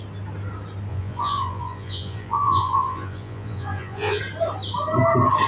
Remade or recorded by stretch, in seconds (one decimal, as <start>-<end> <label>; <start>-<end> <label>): 0.0-0.9 recorded; 0.9-4.2 remade; 4.2-5.5 recorded